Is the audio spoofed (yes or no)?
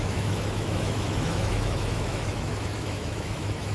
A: yes